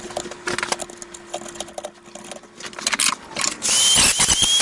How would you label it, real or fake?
real